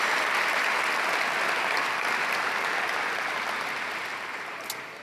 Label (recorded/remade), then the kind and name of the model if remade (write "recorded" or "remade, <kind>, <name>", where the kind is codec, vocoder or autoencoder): recorded